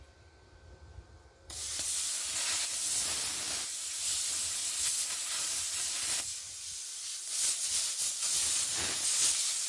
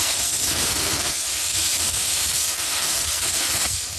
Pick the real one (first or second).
first